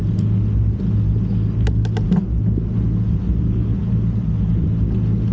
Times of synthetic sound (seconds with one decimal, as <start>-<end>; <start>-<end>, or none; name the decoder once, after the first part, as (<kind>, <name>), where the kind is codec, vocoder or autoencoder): none

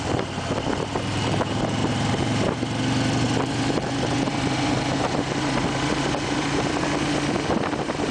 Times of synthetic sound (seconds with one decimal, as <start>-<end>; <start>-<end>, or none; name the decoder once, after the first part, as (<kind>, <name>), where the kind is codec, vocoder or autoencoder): 1.8-6.7 (vocoder, BigVGAN v2)

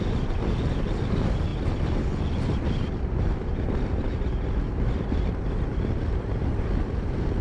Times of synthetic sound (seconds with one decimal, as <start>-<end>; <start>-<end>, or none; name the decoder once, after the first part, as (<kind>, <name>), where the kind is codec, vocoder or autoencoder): none

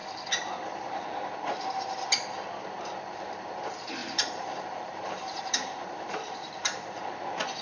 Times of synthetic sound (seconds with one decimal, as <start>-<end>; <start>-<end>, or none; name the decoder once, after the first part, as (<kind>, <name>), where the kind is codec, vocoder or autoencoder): 4.0-7.0 (vocoder, BigVGAN v2)

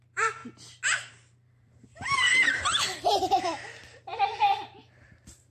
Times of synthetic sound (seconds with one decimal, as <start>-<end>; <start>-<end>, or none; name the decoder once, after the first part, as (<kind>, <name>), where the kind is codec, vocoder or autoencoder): 0.0-0.4 (vocoder, BigVGAN v2); 1.1-5.5

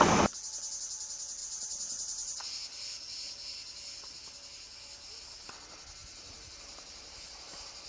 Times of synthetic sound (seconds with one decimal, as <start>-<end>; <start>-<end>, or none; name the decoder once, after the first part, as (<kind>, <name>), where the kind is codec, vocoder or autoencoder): 1.4-2.4 (vocoder, BigVGAN v2); 6.0-7.9